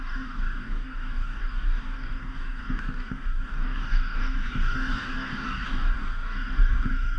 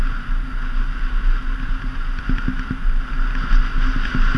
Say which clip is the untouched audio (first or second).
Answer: second